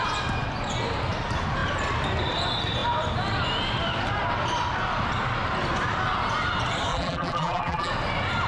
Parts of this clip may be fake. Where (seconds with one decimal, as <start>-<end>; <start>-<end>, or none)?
6.9-7.9

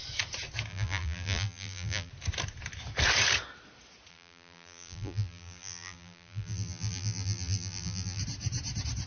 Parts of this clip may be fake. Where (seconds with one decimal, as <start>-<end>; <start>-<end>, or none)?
0.7-2.1; 4.1-8.2